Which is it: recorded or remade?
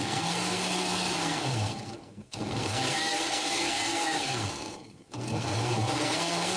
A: remade